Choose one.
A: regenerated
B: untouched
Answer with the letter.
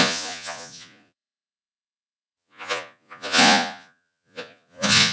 A